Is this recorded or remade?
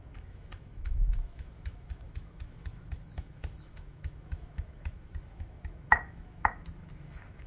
remade